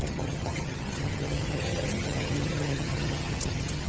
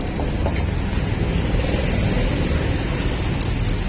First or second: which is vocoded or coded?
first